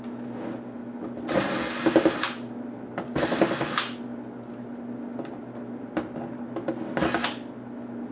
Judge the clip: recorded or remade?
recorded